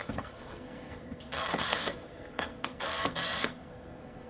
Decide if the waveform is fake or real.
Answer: fake